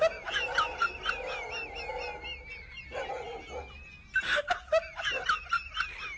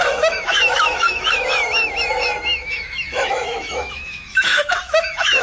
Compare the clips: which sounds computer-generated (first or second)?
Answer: second